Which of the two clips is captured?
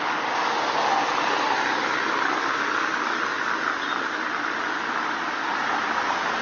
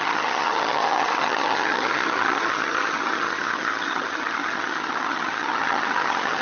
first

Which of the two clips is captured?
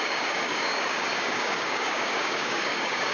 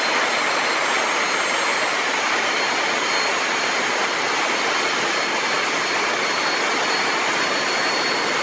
second